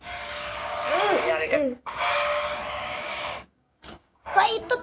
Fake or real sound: fake